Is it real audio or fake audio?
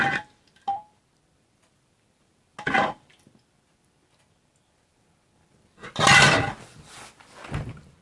real